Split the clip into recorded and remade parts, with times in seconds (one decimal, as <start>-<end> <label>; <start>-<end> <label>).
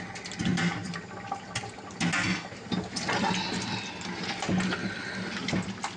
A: 0.0-6.0 recorded